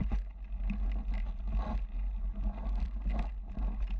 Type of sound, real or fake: real